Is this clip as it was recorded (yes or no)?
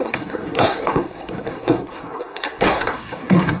no